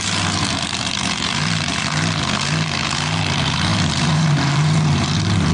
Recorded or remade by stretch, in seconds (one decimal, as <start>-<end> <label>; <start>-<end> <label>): 0.0-5.5 remade